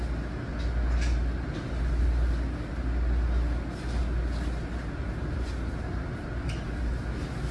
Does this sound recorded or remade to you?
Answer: recorded